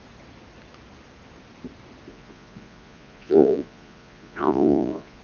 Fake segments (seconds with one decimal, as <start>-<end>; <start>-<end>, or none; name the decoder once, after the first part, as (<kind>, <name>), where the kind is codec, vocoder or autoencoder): 2.1-5.2 (vocoder, Vocos)